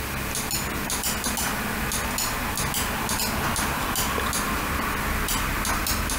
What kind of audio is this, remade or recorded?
recorded